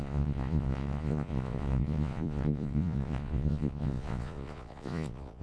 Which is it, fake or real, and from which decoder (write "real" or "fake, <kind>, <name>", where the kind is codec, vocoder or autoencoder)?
fake, vocoder, Vocos